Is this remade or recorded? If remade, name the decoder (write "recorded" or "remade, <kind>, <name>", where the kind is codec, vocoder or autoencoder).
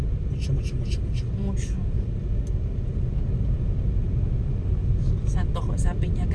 recorded